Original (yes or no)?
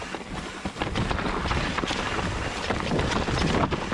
yes